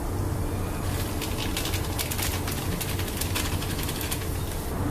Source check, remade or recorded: recorded